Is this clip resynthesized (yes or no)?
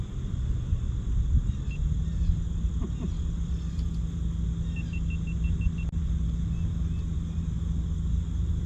no